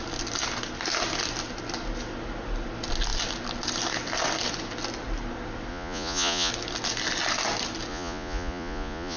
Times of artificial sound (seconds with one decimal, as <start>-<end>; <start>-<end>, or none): 5.7-6.5; 7.9-9.2